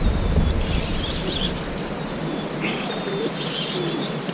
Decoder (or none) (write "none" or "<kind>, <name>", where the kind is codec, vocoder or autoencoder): none